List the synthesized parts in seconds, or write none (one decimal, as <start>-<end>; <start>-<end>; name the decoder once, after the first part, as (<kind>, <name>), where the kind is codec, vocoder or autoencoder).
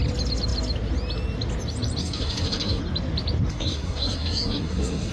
2.0-2.8 (codec, SNAC); 3.5-5.1